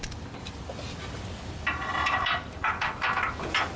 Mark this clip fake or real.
real